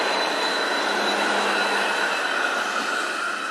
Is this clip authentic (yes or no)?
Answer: yes